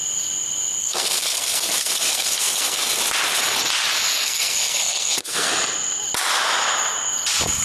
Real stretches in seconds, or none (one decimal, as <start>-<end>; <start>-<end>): 0.0-0.8; 3.0-4.1; 5.5-7.6